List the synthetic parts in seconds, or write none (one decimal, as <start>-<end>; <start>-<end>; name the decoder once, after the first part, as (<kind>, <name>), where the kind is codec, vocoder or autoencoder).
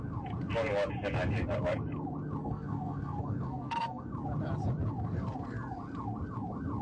2.4-4.1 (codec, SNAC)